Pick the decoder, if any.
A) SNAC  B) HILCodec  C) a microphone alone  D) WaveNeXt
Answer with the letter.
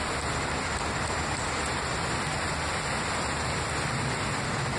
C